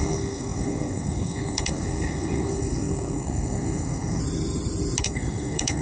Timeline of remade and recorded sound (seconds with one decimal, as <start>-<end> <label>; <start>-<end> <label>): 0.0-4.2 remade; 4.2-5.0 recorded; 5.0-5.8 remade